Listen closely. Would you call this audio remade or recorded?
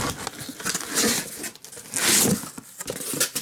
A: recorded